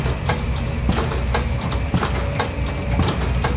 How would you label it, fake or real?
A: fake